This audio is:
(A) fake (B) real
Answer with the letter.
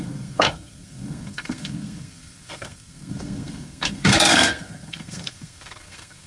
A